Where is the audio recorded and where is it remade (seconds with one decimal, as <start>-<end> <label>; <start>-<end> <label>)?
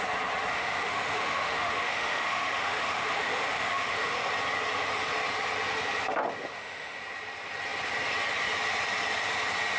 0.0-0.5 recorded; 0.5-4.3 remade; 4.3-6.5 recorded; 6.5-7.0 remade; 7.0-9.8 recorded